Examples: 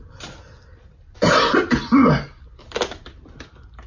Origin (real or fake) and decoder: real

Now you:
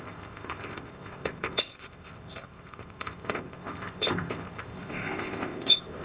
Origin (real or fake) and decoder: fake, codec, ZipCodec